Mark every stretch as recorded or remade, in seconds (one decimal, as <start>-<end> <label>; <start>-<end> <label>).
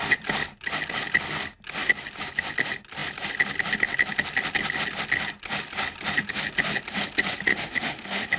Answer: 0.0-7.5 recorded; 7.5-8.4 remade